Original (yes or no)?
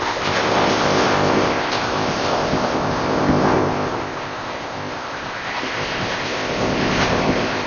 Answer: no